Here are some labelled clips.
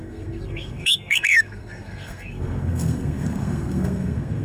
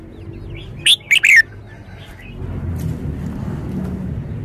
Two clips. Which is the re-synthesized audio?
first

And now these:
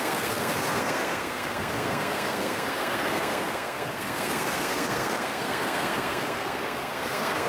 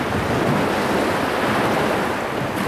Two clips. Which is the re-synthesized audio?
first